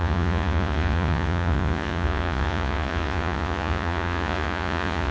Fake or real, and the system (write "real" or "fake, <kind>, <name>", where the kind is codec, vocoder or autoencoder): fake, vocoder, Vocos